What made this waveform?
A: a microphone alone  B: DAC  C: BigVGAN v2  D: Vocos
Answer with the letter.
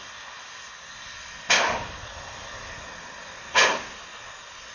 A